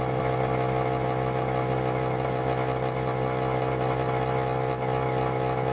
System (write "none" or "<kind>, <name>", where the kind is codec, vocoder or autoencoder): vocoder, BigVGAN v2